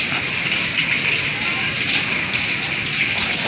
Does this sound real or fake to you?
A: real